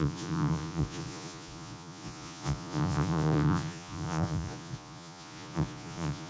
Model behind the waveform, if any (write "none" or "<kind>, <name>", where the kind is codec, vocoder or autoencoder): vocoder, Vocos